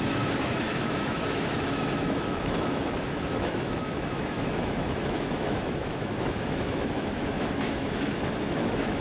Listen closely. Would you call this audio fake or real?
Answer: fake